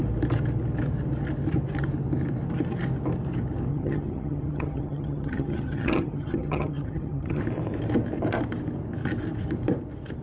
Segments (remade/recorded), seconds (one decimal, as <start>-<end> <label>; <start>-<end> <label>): 0.0-3.7 recorded; 3.7-7.4 remade; 7.4-10.2 recorded